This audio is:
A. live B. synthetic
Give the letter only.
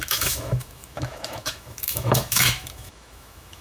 B